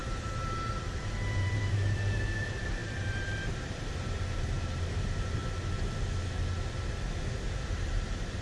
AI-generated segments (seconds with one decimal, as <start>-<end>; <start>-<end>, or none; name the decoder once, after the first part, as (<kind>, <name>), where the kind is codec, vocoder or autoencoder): 0.0-5.4 (vocoder, BigVGAN v2); 7.7-8.4